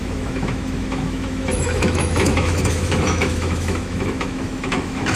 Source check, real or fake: fake